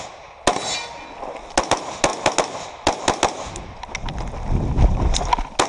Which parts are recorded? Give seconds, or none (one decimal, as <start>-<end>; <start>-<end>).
0.0-5.7